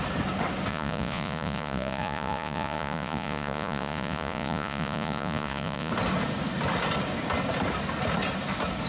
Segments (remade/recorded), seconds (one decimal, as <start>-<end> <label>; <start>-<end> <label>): 0.0-0.7 recorded; 0.7-5.9 remade; 5.9-8.9 recorded